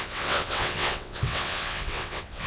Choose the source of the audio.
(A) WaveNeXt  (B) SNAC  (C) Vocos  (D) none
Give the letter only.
A